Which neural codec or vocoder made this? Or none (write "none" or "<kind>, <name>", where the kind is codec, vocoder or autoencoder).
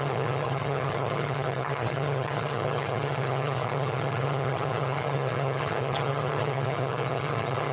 vocoder, HiFi-GAN